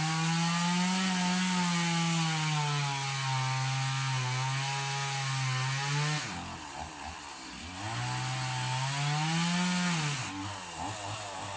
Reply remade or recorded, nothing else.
recorded